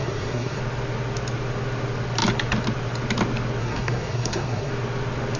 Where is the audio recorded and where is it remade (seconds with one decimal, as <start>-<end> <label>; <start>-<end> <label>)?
0.0-0.6 remade; 0.6-3.6 recorded; 3.6-4.7 remade; 4.7-5.4 recorded